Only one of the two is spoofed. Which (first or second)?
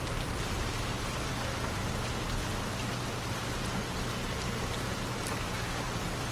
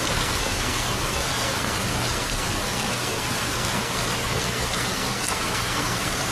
second